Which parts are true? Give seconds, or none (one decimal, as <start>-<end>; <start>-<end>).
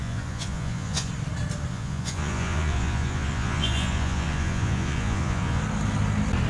1.1-1.7; 5.6-6.5